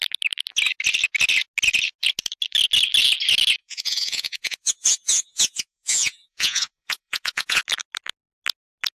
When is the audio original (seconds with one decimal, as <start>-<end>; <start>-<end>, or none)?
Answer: 0.0-3.6; 7.6-9.0